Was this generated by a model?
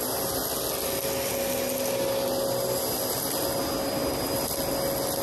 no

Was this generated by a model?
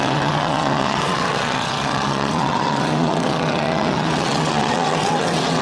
yes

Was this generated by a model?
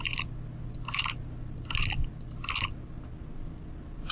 no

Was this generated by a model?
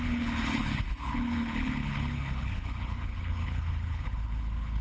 yes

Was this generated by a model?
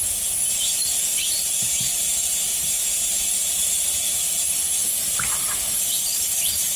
yes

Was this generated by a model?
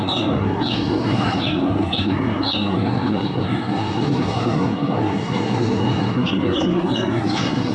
yes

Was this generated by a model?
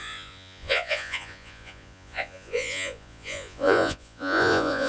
yes